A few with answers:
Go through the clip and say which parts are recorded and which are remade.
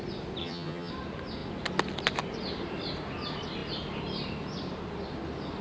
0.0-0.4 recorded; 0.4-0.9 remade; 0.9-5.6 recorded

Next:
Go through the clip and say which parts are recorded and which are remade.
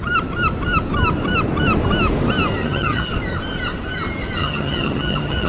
0.0-2.6 recorded; 2.6-3.1 remade; 3.1-4.4 recorded; 4.4-5.5 remade